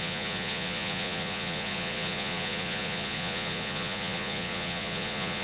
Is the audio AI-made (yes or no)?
yes